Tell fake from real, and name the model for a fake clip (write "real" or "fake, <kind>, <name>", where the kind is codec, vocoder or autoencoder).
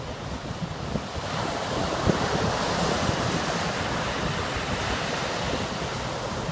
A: real